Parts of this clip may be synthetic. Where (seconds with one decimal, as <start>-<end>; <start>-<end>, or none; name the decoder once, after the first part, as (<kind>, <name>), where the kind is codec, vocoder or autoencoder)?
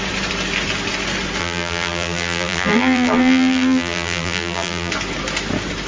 1.4-4.9 (vocoder, BigVGAN v2)